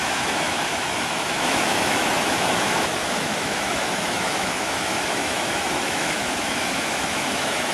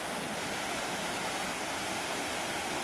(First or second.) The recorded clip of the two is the second